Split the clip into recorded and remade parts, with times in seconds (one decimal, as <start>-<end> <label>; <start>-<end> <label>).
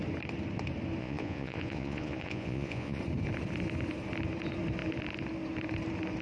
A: 0.0-1.0 recorded; 1.0-3.0 remade; 3.0-6.2 recorded